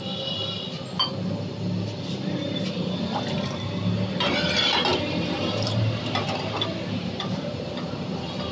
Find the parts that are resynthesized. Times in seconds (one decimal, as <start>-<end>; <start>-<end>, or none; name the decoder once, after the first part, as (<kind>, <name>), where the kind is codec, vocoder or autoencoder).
4.9-7.7 (vocoder, BigVGAN v2)